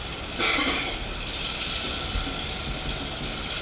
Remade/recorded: recorded